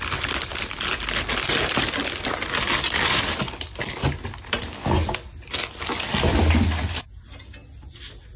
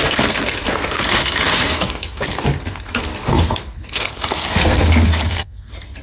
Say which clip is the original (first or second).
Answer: first